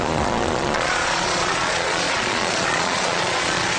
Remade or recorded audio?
remade